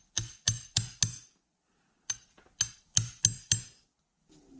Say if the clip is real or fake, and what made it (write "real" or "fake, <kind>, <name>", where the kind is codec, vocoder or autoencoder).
real